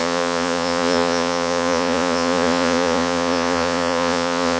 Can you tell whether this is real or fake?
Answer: fake